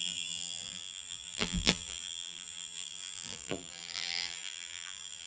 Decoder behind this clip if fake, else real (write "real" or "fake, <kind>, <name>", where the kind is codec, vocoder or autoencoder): fake, vocoder, BigVGAN v2